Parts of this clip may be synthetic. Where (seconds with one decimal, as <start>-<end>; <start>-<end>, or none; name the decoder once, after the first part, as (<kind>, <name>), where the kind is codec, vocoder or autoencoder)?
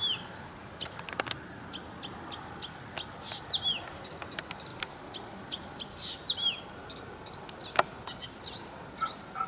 none